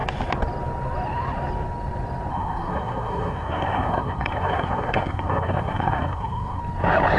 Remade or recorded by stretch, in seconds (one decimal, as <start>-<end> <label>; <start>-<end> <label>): 0.0-2.3 recorded; 2.3-6.6 remade; 6.6-7.2 recorded